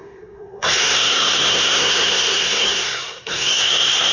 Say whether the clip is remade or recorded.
remade